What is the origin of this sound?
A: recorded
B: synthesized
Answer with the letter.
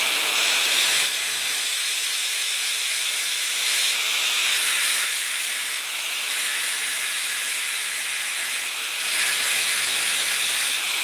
B